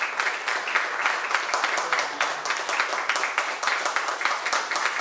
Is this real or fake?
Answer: real